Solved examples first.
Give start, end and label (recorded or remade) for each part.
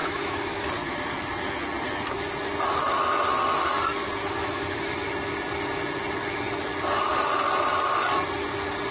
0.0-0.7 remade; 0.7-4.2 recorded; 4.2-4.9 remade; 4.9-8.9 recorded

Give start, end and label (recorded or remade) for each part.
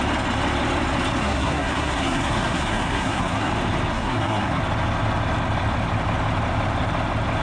0.0-1.2 recorded; 1.2-3.5 remade; 3.5-3.9 recorded; 3.9-4.6 remade; 4.6-7.4 recorded